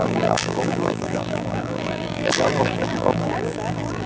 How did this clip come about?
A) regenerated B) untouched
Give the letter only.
A